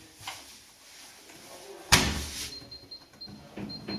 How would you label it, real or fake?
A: real